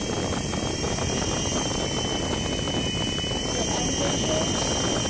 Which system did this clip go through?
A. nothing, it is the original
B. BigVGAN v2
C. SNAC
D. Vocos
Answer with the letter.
A